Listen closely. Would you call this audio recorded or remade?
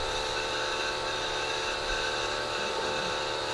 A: remade